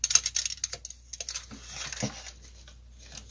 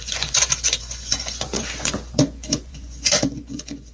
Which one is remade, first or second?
second